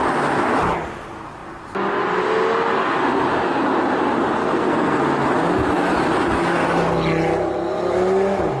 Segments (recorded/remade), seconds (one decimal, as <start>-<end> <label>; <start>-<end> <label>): 0.0-4.4 recorded; 4.4-5.0 remade; 5.0-8.6 recorded